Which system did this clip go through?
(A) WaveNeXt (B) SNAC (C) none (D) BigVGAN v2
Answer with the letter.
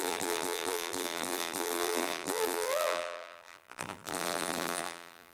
D